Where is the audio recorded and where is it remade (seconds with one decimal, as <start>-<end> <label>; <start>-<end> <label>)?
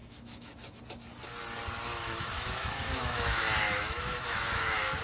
0.0-0.8 remade; 0.8-1.9 recorded; 1.9-5.0 remade